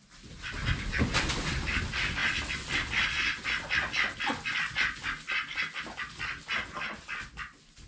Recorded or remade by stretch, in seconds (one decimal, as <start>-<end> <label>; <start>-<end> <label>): 0.0-7.9 recorded